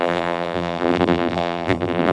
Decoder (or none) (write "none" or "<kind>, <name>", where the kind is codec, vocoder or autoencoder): vocoder, BigVGAN v2